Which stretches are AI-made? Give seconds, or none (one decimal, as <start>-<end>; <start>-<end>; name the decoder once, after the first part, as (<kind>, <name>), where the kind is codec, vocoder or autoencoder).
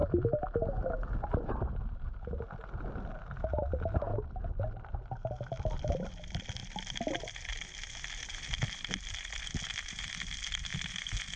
none